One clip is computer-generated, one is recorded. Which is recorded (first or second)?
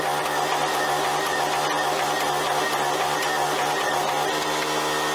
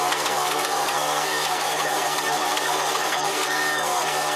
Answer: first